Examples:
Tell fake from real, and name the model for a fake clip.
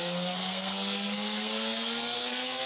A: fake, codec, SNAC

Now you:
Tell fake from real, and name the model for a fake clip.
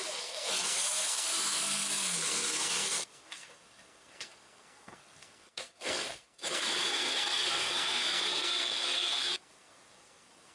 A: fake, codec, SNAC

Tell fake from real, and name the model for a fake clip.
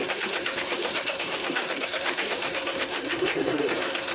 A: fake, codec, SNAC